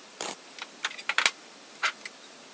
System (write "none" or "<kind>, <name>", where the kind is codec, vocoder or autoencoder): none